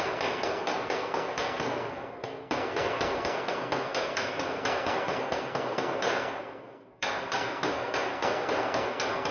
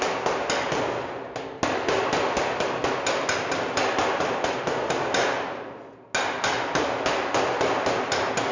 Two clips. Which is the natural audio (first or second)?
second